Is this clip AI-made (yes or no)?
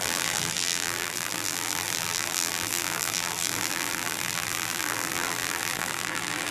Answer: yes